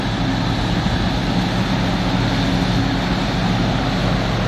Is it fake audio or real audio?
real